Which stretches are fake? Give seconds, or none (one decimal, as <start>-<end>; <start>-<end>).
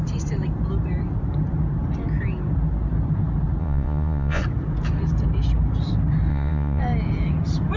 3.6-4.4; 6.3-6.8